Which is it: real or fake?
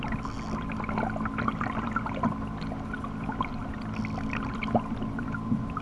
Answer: real